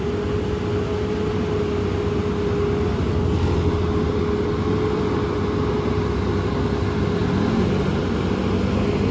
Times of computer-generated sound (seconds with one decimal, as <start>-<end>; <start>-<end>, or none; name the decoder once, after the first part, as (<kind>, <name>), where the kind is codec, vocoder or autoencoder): none